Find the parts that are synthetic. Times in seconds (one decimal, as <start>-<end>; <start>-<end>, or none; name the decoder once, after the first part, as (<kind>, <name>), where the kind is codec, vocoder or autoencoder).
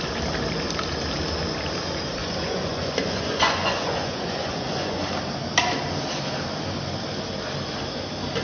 2.2-5.0 (vocoder, Vocos)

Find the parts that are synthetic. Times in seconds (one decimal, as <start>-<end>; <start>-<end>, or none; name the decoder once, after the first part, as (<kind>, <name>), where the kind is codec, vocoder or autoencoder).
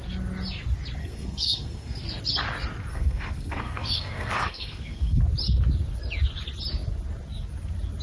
1.0-2.2 (codec, SNAC); 2.9-5.2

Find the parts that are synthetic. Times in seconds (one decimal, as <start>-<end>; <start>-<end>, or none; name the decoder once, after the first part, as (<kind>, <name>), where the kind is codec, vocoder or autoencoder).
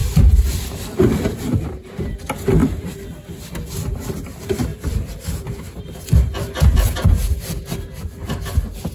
0.0-1.6 (vocoder, BigVGAN v2); 4.7-5.8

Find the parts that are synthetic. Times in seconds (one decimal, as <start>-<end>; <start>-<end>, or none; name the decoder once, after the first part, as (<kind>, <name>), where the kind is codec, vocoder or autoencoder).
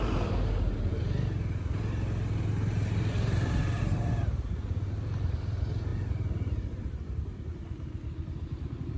none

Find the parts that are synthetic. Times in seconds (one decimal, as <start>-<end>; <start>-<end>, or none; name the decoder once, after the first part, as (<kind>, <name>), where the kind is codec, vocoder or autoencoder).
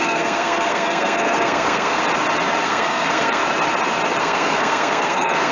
0.0-2.0 (codec, SNAC); 2.6-3.4; 4.2-5.5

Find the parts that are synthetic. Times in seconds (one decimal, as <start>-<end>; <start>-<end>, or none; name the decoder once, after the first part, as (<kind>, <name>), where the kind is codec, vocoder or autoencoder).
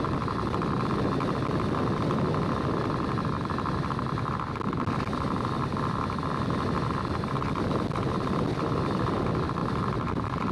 9.6-10.5 (vocoder, BigVGAN v2)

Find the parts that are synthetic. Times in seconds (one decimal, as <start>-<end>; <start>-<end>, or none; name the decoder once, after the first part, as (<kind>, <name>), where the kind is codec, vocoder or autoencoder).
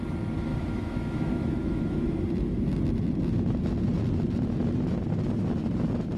0.5-2.2 (autoencoder, DAC-VAE)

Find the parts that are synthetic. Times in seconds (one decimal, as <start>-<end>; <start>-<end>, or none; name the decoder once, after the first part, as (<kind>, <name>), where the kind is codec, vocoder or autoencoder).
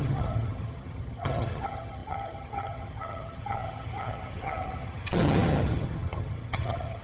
0.0-7.0 (vocoder, HiFi-GAN)